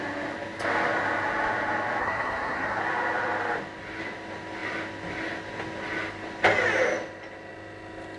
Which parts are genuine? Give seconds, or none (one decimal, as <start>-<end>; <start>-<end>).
0.0-2.0; 2.8-8.2